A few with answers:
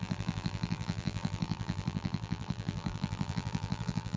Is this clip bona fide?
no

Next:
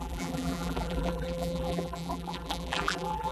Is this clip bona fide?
no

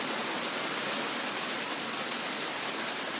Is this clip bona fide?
yes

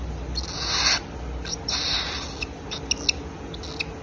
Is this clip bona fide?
yes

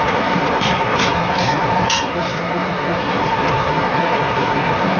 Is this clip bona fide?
no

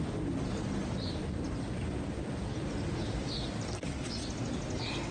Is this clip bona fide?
yes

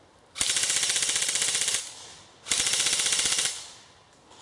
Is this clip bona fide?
yes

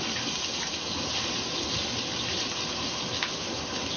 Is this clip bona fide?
yes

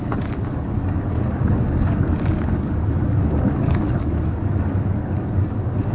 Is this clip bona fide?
no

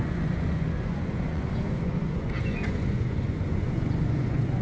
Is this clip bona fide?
no